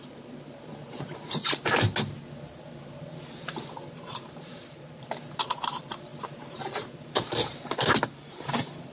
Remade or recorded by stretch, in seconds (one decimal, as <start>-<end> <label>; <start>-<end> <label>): 0.0-1.4 remade; 1.4-3.7 recorded; 3.7-8.9 remade